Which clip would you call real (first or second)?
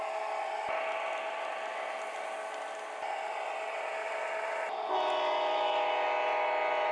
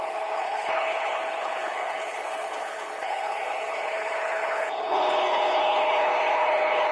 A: first